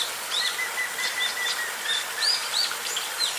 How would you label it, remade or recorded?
recorded